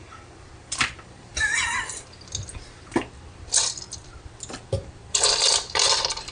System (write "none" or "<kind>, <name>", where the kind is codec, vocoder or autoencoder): vocoder, BigVGAN v2